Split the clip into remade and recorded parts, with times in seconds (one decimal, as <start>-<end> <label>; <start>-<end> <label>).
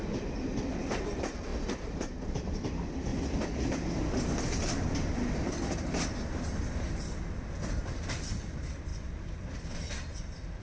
0.0-3.1 remade; 3.1-8.1 recorded; 8.1-10.6 remade